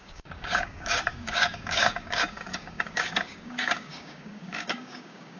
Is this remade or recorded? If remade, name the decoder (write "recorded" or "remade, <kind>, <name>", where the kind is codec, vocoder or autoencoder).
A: remade, codec, DAC